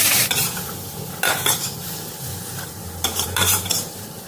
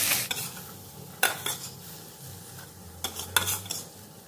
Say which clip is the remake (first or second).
first